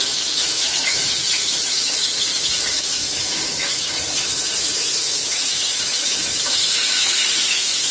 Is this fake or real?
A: fake